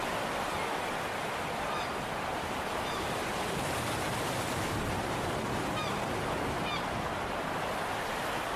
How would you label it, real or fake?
fake